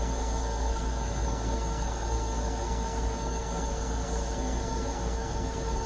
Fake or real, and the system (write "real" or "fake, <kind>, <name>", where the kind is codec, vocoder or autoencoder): fake, codec, SNAC